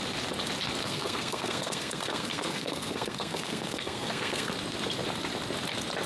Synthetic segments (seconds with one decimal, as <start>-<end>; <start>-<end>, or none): 0.8-4.5